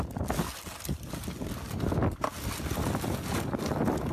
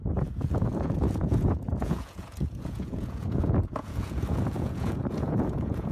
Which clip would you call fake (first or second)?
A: second